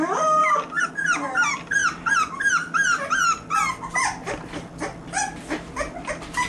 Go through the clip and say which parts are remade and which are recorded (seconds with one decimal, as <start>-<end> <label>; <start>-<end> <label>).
0.0-6.5 recorded